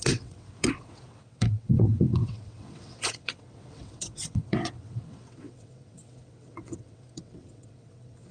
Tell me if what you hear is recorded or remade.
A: remade